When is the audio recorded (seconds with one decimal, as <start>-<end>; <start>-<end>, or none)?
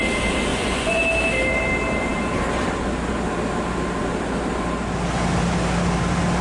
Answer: 0.0-0.5; 1.0-6.4